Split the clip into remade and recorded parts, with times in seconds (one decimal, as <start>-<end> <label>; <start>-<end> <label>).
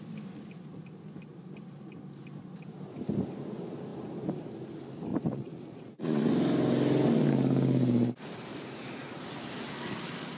0.0-5.1 recorded; 5.1-6.3 remade; 6.3-8.5 recorded; 8.5-9.2 remade; 9.2-10.4 recorded